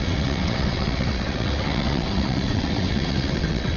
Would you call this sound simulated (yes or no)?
yes